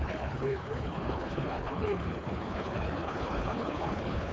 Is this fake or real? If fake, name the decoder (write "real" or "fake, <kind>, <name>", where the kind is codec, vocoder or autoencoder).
fake, codec, HILCodec